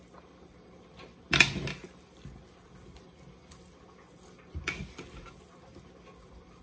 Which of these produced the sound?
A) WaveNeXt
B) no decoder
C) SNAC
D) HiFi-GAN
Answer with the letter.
B